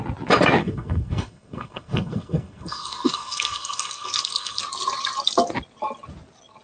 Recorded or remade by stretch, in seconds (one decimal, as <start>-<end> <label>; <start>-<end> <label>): 0.0-0.6 recorded; 0.6-4.6 remade; 4.6-6.6 recorded